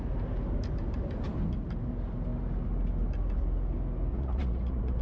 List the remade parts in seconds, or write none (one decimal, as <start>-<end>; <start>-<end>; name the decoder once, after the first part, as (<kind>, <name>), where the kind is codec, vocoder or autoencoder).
4.1-5.0 (vocoder, Vocos)